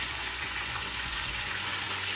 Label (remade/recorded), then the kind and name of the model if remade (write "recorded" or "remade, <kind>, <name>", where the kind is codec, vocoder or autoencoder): remade, vocoder, Vocos